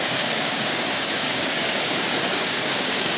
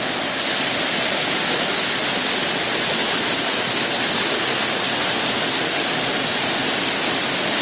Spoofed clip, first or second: first